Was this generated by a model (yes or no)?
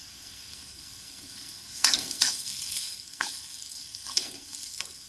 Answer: yes